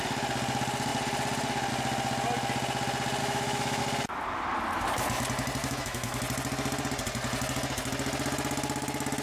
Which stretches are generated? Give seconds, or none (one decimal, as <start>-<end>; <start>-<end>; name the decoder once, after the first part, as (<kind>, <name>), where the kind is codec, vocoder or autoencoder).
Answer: 3.2-3.8 (autoencoder, DAC-VAE); 5.6-6.2